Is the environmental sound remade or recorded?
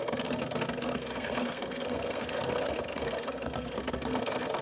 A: remade